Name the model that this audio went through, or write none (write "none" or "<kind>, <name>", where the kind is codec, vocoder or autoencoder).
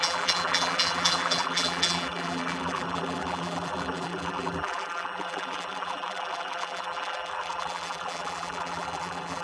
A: vocoder, BigVGAN v2